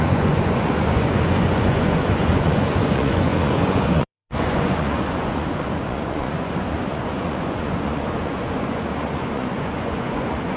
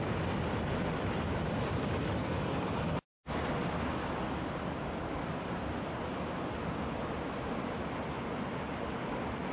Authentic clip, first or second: second